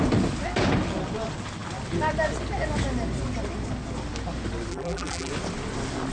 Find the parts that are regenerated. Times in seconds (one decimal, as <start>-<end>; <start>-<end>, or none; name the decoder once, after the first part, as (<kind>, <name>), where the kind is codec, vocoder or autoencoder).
4.7-5.3 (vocoder, BigVGAN v2)